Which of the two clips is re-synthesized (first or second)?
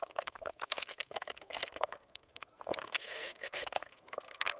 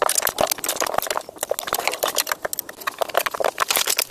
first